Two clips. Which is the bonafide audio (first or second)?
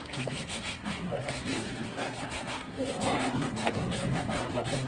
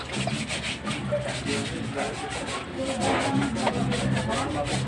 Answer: second